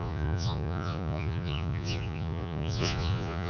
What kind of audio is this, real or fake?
fake